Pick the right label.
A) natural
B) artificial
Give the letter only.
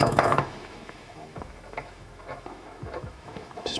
B